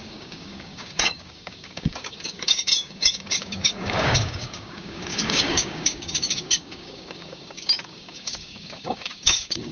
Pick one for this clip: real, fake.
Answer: fake